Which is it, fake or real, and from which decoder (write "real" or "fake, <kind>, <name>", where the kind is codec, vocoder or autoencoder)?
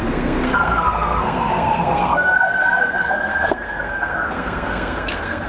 fake, codec, SNAC